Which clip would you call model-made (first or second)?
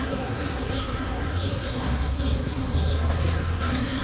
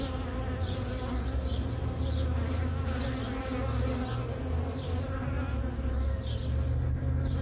first